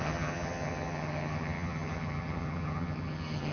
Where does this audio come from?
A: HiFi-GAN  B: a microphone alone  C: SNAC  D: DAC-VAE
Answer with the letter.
A